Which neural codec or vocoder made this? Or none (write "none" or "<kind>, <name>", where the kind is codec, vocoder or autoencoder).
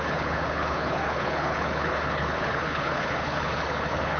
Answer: codec, HILCodec